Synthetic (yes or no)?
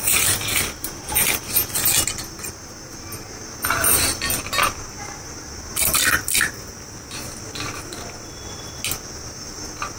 no